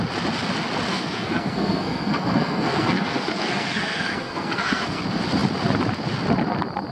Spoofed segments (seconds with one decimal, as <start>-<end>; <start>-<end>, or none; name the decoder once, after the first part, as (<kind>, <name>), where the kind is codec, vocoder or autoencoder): 0.9-5.0 (codec, SNAC)